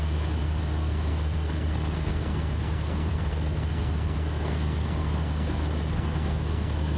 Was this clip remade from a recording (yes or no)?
yes